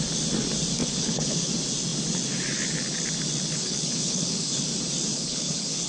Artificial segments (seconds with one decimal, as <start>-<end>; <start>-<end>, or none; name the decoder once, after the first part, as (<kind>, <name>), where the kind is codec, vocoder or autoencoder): 0.8-1.5 (codec, HILCodec); 3.5-4.6; 5.1-5.9